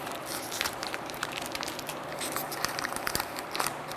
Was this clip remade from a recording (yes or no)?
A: yes